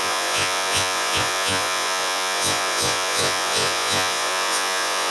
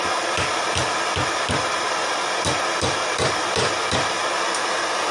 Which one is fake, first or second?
first